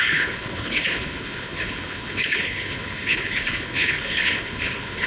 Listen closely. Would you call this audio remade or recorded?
remade